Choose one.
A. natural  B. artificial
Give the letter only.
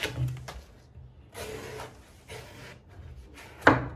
A